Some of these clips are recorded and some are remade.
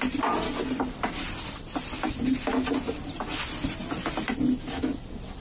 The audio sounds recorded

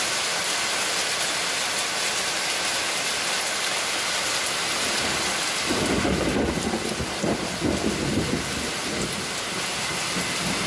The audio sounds recorded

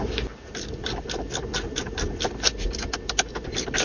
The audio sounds recorded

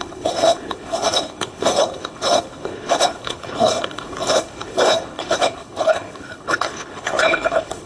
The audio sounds remade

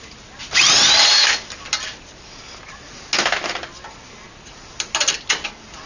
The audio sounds recorded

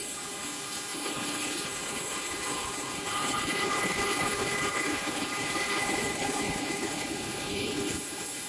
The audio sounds remade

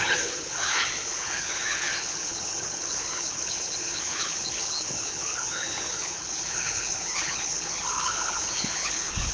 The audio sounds remade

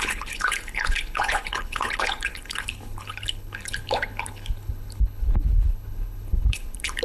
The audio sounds remade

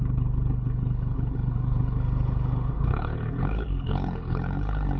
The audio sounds remade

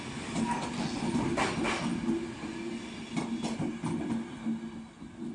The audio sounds recorded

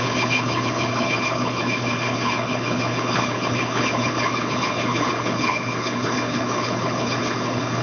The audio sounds remade